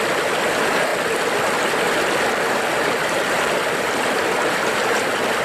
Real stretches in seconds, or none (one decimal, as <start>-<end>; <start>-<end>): 0.0-5.4

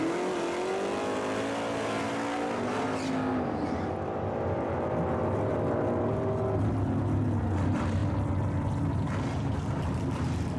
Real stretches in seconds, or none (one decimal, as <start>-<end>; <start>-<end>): 0.0-10.6

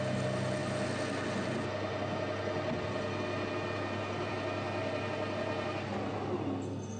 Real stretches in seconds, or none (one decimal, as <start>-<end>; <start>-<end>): 0.0-7.0

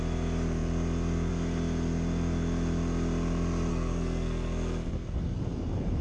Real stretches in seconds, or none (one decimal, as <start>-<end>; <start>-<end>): 0.0-3.7; 5.4-6.0